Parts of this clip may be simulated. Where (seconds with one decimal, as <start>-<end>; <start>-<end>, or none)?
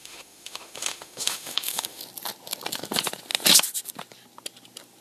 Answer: 0.0-2.0